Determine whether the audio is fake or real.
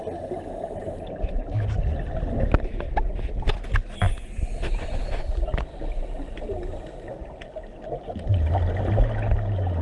real